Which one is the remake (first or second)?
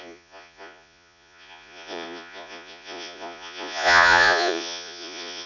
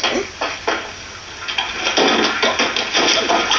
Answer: first